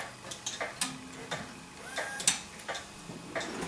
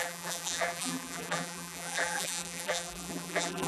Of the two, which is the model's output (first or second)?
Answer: second